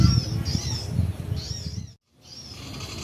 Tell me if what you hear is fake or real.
real